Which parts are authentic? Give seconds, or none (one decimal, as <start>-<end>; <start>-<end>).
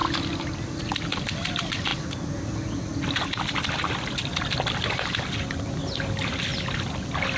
0.0-7.4